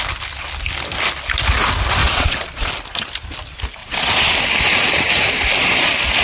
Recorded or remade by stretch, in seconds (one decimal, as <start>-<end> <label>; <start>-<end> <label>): 0.0-2.0 recorded; 2.0-2.7 remade; 2.7-3.8 recorded; 3.8-4.3 remade; 4.3-6.2 recorded